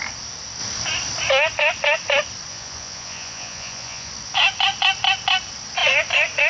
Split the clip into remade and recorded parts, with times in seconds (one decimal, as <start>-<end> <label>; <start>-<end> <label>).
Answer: 0.0-2.5 recorded; 2.5-4.1 remade; 4.1-6.5 recorded